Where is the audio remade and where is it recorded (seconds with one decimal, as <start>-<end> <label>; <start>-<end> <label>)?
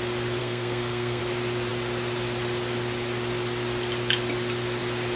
0.0-0.4 recorded; 0.4-1.2 remade; 1.2-5.2 recorded